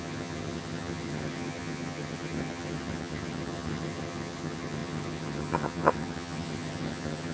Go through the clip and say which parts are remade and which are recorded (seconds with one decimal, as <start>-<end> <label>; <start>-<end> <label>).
0.0-7.3 remade

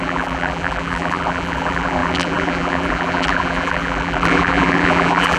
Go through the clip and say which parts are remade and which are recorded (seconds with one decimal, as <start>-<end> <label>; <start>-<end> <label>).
0.0-5.4 remade

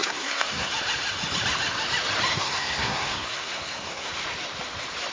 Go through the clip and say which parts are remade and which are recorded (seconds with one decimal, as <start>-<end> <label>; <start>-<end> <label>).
0.0-0.7 remade; 0.7-2.3 recorded; 2.3-4.1 remade; 4.1-5.1 recorded

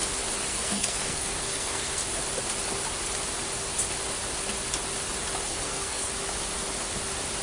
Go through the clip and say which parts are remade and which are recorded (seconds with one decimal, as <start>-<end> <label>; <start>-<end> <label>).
0.0-0.5 recorded; 0.5-2.0 remade; 2.0-5.5 recorded; 5.5-6.1 remade; 6.1-7.4 recorded